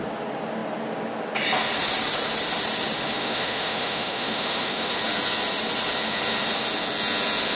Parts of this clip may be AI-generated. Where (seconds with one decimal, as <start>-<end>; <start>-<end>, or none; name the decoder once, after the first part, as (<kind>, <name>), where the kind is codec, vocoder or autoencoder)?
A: 3.2-4.9 (autoencoder, DAC-VAE)